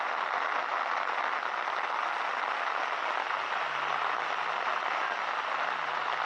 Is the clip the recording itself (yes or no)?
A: yes